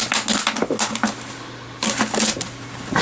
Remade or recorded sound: recorded